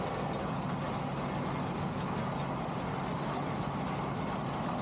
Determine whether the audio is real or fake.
real